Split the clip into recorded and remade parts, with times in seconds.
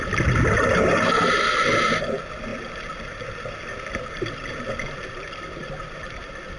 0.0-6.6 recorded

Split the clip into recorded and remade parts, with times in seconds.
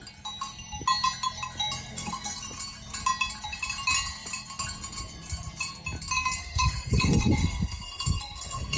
0.0-1.9 recorded; 1.9-2.4 remade; 2.4-6.4 recorded; 6.4-8.8 remade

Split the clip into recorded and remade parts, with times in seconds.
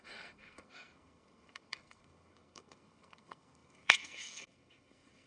0.0-5.3 remade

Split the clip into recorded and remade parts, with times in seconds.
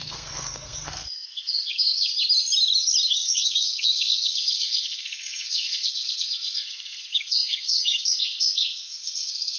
0.0-2.1 remade; 2.1-3.1 recorded; 3.1-9.6 remade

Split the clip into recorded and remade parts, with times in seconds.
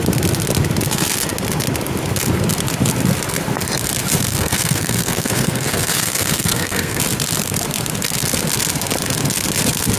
0.0-4.3 recorded; 4.3-7.0 remade; 7.0-10.0 recorded